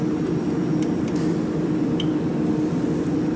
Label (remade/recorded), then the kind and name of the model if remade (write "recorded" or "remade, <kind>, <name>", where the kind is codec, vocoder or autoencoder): recorded